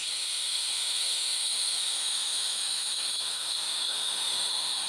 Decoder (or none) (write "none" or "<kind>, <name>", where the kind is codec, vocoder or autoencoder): autoencoder, DAC-VAE